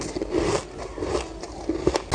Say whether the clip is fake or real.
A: real